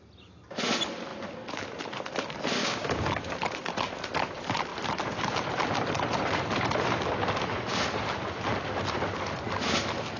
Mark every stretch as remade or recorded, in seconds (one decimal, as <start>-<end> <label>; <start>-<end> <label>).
0.0-2.6 recorded; 2.6-3.3 remade; 3.3-10.2 recorded